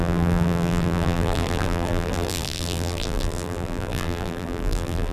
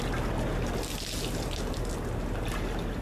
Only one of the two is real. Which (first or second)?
second